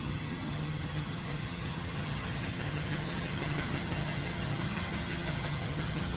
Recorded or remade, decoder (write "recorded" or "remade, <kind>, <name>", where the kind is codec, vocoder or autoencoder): remade, vocoder, HiFi-GAN